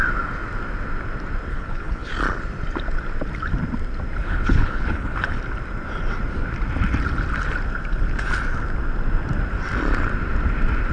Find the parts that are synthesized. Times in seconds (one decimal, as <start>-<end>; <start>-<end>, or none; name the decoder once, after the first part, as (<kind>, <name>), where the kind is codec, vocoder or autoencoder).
1.5-2.1 (codec, HILCodec); 4.2-5.4